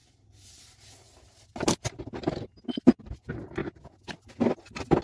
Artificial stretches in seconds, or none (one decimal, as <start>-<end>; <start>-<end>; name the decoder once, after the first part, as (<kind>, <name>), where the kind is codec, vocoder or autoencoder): none